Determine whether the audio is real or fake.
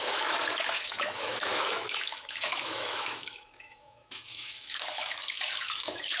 fake